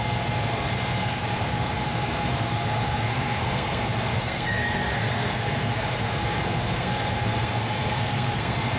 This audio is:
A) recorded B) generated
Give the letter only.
B